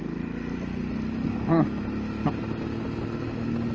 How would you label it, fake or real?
real